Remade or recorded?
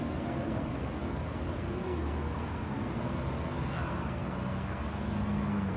remade